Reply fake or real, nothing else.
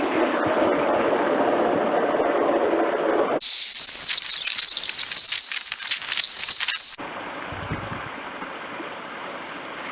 real